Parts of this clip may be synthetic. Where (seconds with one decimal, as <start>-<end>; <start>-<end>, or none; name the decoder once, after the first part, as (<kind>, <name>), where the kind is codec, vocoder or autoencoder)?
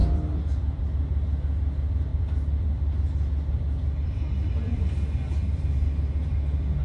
2.1-4.8 (vocoder, BigVGAN v2)